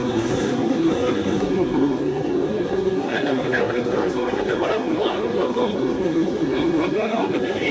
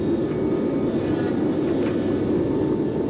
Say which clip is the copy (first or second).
first